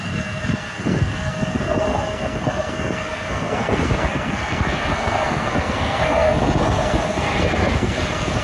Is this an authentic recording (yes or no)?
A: no